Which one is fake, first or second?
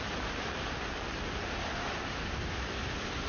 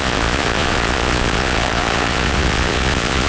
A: second